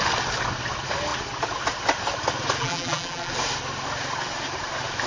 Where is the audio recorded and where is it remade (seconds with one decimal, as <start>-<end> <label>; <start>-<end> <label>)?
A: 0.0-2.6 recorded; 2.6-3.3 remade; 3.3-5.1 recorded